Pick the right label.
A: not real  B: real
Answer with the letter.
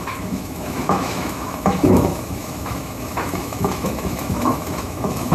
A